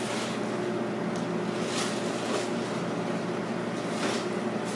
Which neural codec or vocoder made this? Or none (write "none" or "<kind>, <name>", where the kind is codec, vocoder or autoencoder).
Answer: none